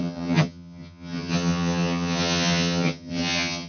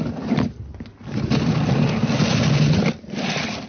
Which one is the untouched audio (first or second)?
second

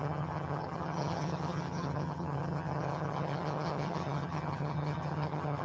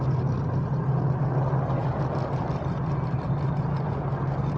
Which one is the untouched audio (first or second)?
second